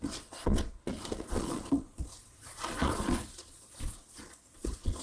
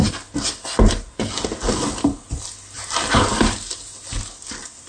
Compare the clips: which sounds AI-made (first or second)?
first